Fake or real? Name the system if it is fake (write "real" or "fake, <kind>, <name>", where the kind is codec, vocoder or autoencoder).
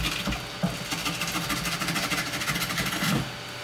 real